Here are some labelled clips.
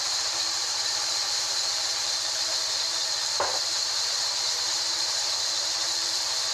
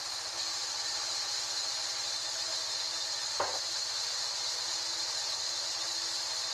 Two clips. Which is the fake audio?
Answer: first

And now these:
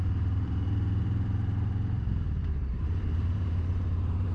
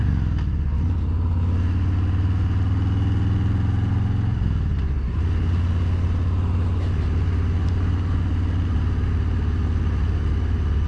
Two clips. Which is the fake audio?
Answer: first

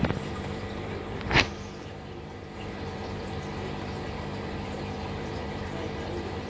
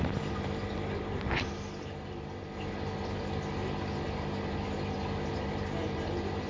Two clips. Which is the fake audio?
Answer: first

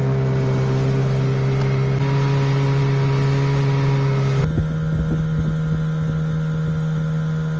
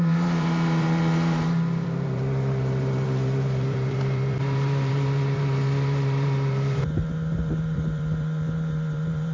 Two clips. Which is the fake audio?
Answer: second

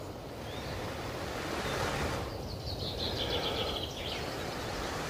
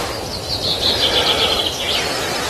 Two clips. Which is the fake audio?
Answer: first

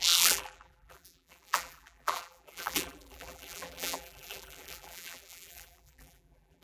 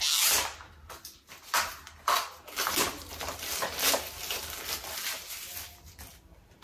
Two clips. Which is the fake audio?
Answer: first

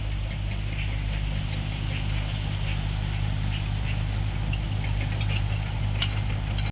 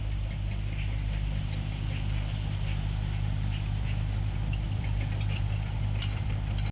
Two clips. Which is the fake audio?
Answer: second